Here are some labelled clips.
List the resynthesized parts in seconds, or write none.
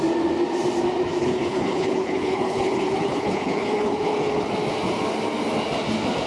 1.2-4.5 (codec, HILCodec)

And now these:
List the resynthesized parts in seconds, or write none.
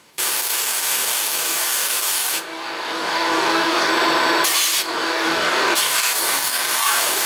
0.0-3.9 (codec, DAC); 4.8-7.3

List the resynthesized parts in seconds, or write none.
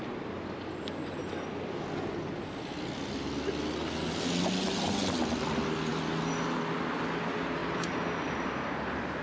none